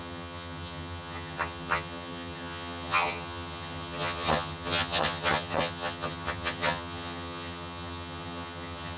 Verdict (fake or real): fake